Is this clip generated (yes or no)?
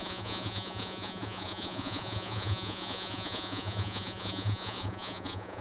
yes